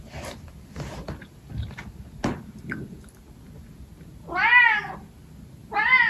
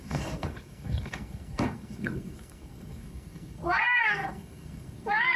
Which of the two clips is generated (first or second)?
second